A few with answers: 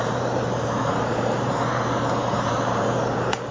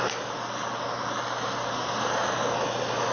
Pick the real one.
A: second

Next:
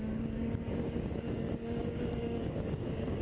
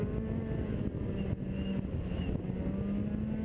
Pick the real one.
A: second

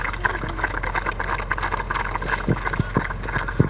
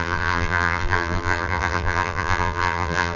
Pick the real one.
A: first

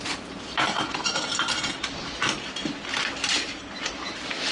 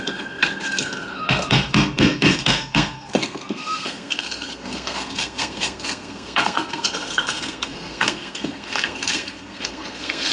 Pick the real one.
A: first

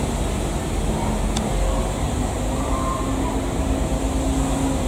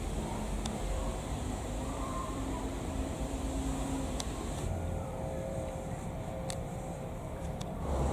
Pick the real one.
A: first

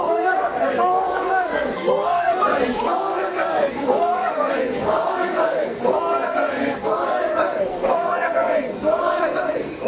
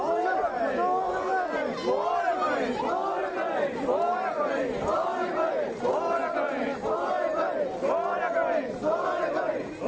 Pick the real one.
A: second